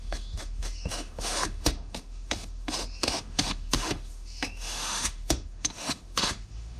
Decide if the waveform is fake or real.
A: fake